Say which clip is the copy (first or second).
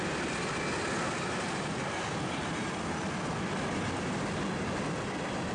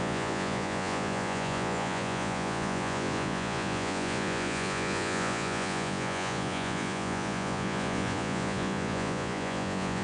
second